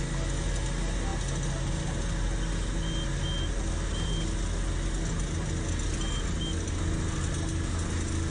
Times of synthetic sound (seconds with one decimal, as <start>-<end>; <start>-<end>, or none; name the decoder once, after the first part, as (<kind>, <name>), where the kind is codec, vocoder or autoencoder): none